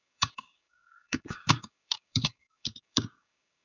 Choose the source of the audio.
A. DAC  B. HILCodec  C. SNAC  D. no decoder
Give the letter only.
A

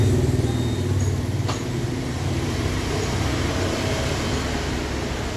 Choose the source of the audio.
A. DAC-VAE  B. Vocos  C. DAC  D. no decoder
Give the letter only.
D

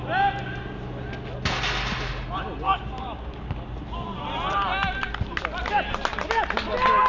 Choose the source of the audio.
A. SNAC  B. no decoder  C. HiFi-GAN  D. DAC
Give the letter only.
B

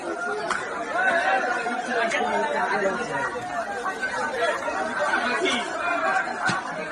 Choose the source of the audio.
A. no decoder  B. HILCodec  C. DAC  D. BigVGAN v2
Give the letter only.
A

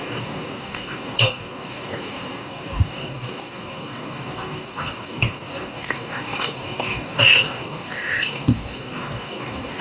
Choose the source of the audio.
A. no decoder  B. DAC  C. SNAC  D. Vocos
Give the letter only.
B